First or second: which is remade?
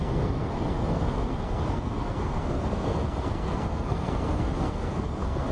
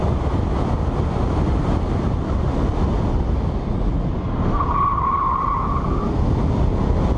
first